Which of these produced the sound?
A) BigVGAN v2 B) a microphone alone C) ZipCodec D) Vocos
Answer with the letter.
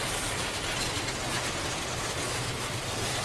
B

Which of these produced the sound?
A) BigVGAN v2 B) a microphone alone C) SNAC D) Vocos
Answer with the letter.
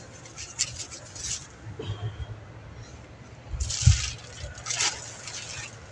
B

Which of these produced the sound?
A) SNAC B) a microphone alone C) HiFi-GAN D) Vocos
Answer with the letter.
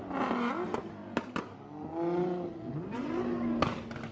B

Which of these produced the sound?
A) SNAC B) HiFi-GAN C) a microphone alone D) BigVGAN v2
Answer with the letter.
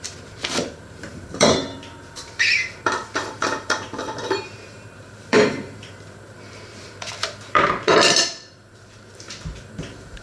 D